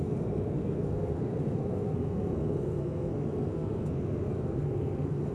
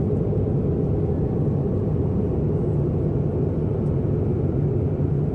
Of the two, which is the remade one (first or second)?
first